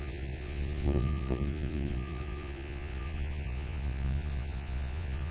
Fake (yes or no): yes